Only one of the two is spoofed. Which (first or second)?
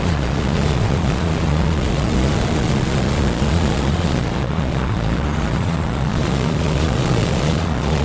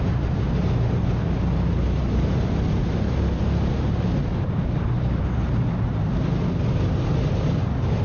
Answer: first